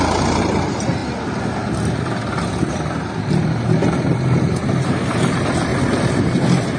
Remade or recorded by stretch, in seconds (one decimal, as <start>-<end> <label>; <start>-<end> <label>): 0.0-1.0 remade; 1.0-2.7 recorded; 2.7-5.7 remade; 5.7-6.2 recorded; 6.2-6.8 remade